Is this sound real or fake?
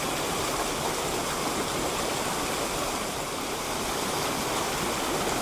real